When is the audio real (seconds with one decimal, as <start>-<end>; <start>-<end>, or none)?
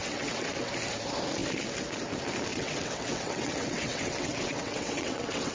0.7-2.5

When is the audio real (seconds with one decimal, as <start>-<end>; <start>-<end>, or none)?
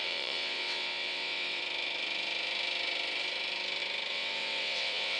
1.6-4.1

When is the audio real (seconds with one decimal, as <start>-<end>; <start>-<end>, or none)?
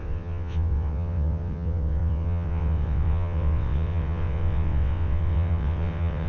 none